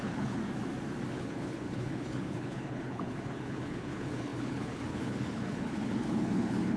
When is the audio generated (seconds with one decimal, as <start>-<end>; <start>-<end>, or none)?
0.0-0.4; 1.1-6.8